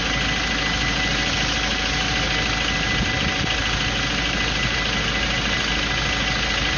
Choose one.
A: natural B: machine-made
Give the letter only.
A